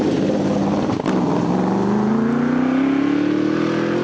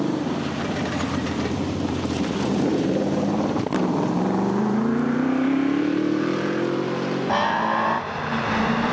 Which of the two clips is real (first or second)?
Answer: first